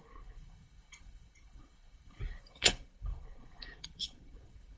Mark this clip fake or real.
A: fake